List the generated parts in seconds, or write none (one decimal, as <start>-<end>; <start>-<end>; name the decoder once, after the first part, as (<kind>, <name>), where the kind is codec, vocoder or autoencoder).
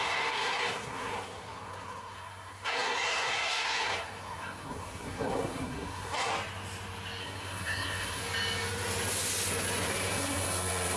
0.0-6.3 (codec, SNAC); 7.2-8.2; 9.9-11.0